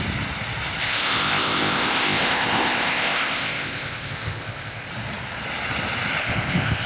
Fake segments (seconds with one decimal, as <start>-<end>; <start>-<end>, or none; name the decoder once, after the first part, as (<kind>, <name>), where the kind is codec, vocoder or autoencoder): 0.8-4.9 (codec, ZipCodec); 6.2-6.9